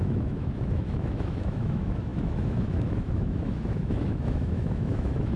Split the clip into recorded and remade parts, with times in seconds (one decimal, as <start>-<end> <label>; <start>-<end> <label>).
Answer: 0.0-5.4 remade